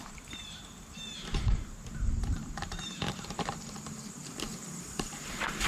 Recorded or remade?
remade